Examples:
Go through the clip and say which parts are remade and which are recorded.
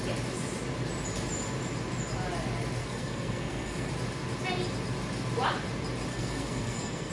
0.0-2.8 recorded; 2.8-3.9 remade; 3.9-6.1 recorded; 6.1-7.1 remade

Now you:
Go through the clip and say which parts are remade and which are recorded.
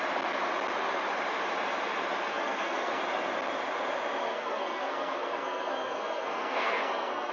0.0-2.3 recorded; 2.3-3.0 remade; 3.0-4.2 recorded; 4.2-7.3 remade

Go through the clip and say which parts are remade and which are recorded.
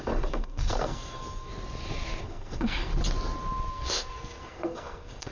0.0-1.5 remade; 1.5-2.2 recorded; 2.2-2.9 remade; 2.9-3.7 recorded; 3.7-5.3 remade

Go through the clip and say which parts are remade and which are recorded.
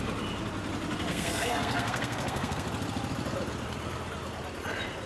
0.0-1.1 recorded; 1.1-2.7 remade; 2.7-5.1 recorded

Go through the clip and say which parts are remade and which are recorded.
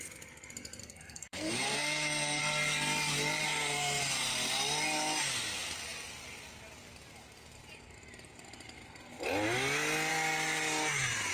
0.0-0.8 recorded; 0.8-2.4 remade; 2.4-3.4 recorded; 3.4-4.0 remade; 4.0-11.3 recorded